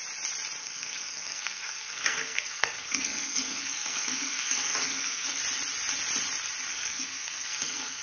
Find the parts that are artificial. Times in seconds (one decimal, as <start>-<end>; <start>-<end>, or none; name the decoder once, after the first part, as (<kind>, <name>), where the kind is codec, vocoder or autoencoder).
0.6-5.4 (codec, SNAC); 6.7-8.0